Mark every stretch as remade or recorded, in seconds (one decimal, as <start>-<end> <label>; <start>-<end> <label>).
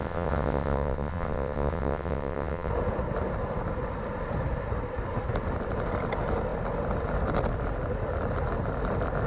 0.0-2.7 remade; 2.7-9.3 recorded